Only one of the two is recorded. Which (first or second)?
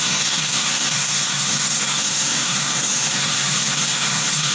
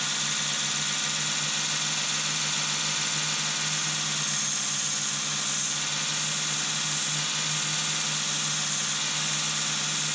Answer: second